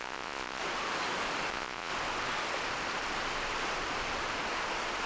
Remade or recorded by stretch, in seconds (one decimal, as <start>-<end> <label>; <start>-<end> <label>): 0.0-0.6 remade; 0.6-1.5 recorded; 1.5-1.9 remade; 1.9-5.1 recorded